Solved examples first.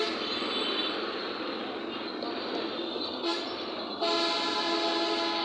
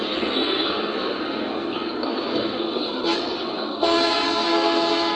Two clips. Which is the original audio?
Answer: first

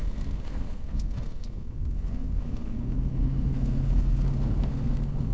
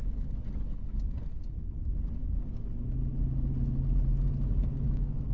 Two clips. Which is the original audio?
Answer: second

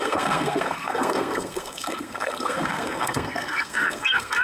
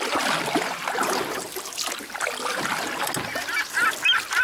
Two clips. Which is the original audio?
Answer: second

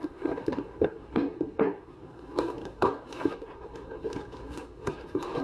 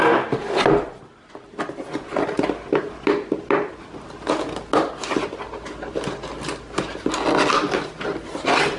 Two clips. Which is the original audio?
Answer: second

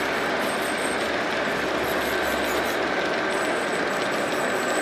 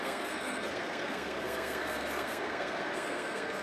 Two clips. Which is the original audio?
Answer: first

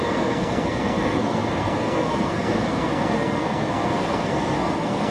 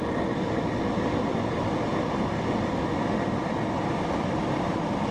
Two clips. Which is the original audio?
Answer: second